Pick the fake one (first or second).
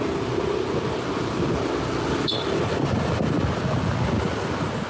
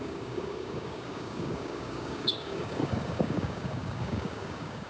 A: second